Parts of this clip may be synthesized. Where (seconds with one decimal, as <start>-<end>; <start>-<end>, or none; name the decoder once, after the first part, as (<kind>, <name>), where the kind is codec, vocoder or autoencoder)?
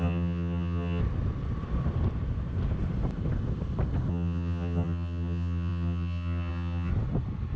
0.0-1.0 (vocoder, HiFi-GAN); 4.1-6.9